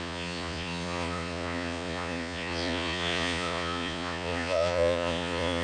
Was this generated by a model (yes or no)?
yes